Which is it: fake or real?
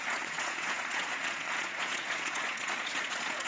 fake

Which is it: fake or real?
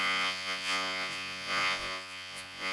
fake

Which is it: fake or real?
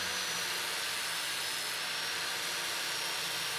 real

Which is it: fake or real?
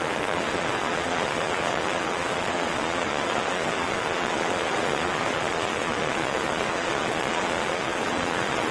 fake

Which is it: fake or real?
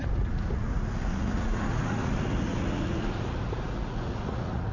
fake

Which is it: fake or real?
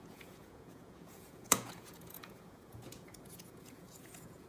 fake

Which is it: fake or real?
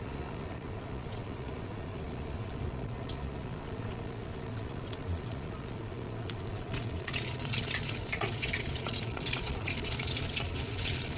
fake